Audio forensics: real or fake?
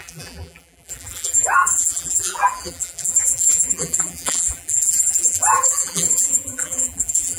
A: fake